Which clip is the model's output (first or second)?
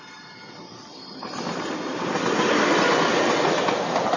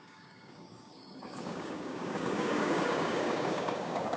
second